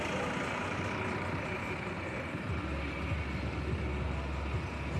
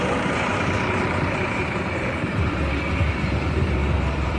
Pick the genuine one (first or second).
first